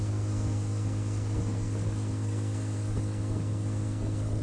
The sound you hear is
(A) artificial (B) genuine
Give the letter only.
A